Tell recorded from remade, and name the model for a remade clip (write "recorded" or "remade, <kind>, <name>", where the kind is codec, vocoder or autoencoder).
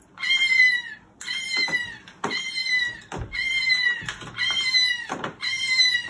recorded